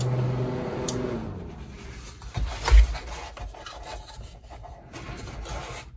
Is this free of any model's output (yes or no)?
yes